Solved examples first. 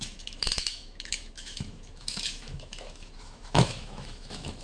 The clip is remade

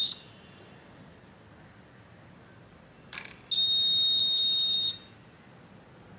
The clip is recorded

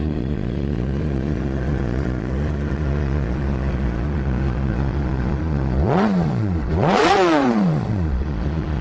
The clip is remade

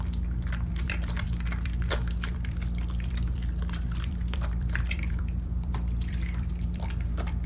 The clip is remade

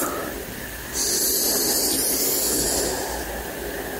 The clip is recorded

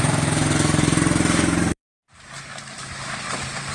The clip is remade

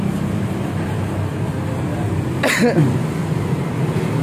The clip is recorded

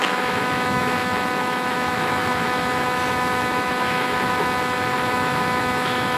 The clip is remade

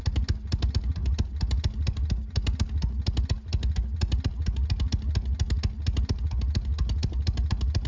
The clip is recorded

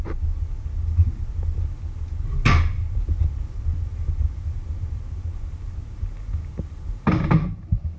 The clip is recorded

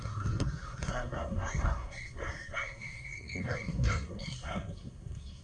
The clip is remade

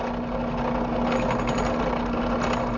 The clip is recorded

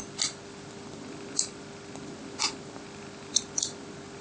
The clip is recorded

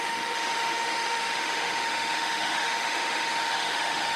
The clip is remade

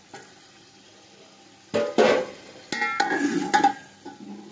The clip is recorded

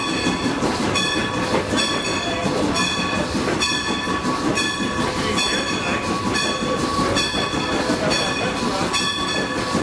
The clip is recorded